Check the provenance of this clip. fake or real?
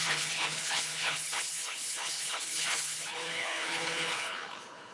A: fake